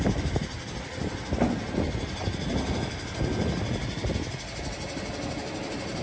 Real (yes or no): yes